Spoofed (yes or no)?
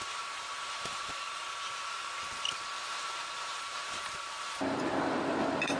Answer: yes